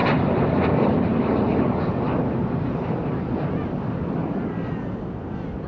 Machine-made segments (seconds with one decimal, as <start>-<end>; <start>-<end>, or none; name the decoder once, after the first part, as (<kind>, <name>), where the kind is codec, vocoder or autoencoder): none